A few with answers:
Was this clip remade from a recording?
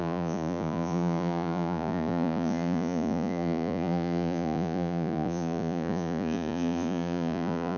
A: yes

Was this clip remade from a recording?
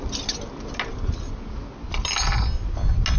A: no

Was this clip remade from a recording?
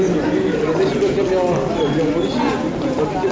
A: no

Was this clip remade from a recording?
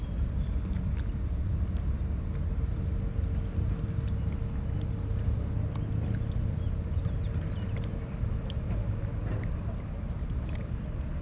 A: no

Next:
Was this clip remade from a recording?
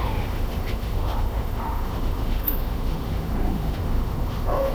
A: yes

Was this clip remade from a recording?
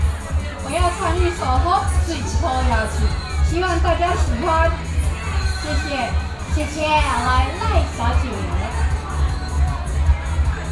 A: no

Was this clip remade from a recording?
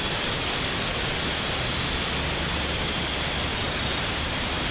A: no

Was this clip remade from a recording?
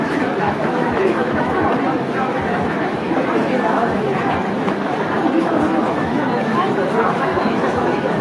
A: yes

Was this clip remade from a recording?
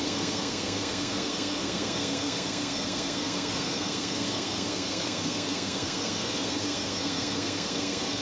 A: yes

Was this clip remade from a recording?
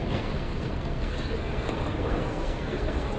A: yes